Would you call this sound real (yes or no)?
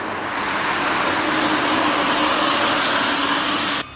yes